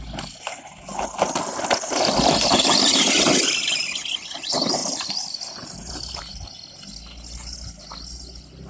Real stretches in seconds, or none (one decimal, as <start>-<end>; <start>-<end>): 0.0-4.8; 6.5-8.7